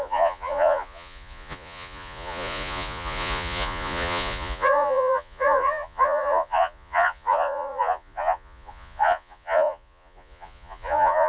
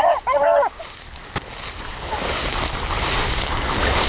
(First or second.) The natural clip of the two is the second